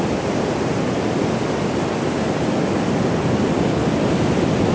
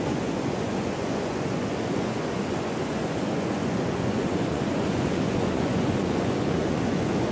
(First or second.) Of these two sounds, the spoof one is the second